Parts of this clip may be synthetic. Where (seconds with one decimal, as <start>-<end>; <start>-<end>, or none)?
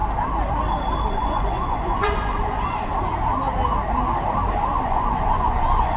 1.1-2.9; 4.8-6.0